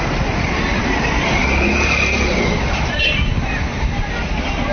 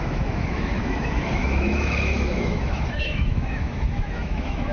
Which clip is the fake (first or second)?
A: second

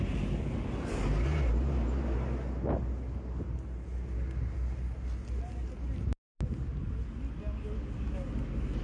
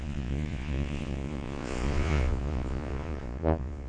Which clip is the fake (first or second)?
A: second